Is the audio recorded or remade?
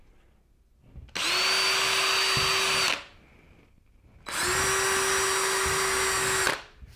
recorded